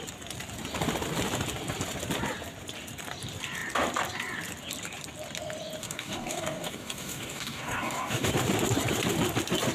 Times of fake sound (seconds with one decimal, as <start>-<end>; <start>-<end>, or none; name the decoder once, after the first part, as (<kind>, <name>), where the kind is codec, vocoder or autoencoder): 5.8-8.3 (codec, DAC)